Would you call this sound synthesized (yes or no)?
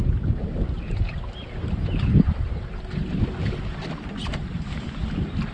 no